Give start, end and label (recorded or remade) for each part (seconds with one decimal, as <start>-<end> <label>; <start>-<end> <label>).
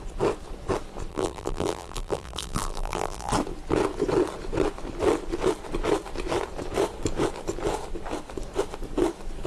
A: 0.0-1.1 recorded; 1.1-3.3 remade; 3.3-9.5 recorded